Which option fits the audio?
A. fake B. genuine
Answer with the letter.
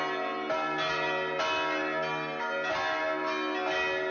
B